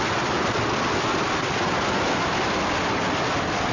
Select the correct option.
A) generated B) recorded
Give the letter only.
B